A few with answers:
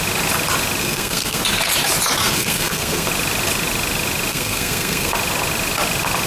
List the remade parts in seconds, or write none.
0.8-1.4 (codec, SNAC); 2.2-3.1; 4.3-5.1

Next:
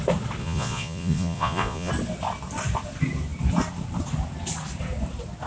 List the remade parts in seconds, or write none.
0.4-1.9 (vocoder, Vocos)

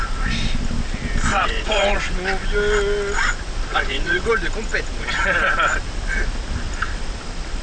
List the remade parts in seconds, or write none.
1.3-2.0 (vocoder, WaveNeXt); 3.7-4.3

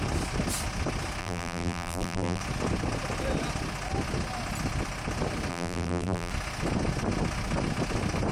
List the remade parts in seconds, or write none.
1.2-2.4 (vocoder, BigVGAN v2); 5.5-6.3

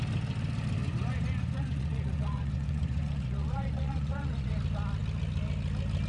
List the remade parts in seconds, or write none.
0.8-4.5 (vocoder, Vocos)